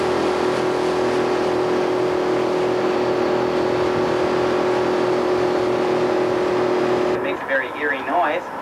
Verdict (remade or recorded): recorded